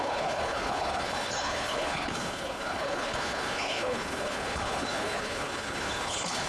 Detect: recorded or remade remade